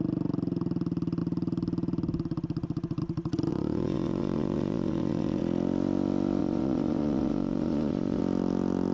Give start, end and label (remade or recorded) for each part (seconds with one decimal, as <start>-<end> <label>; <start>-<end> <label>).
0.0-3.5 recorded; 3.5-5.4 remade; 5.4-6.4 recorded; 6.4-8.2 remade; 8.2-8.9 recorded